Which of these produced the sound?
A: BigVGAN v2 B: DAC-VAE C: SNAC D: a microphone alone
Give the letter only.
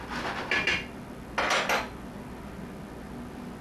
D